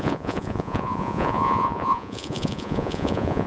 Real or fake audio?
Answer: fake